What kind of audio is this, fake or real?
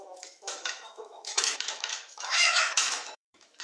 fake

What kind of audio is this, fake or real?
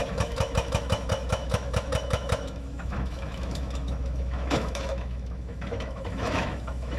fake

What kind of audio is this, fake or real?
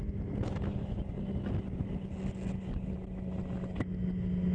real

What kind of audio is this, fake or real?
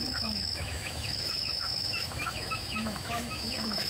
fake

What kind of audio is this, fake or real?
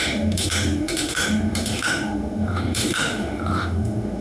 fake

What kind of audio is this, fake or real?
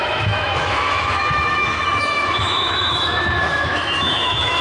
fake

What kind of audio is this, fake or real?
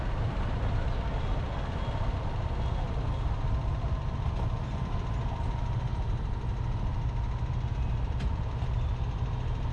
real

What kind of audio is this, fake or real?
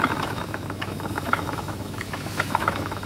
fake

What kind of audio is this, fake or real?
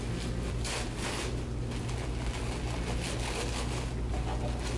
real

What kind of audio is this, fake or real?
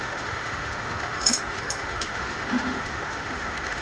fake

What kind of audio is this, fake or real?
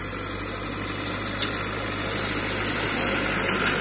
real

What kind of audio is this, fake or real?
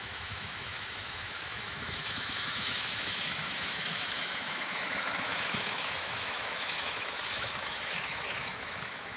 fake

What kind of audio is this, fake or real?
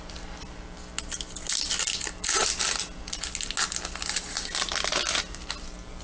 real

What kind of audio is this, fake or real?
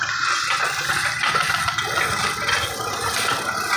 real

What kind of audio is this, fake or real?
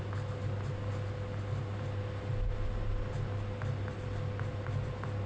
real